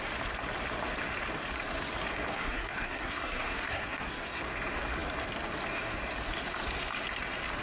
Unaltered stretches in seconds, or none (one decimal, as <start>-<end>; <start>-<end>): 0.0-2.3; 4.4-7.6